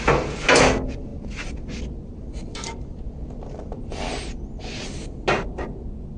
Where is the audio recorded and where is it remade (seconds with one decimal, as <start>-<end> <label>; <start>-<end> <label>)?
0.0-6.2 recorded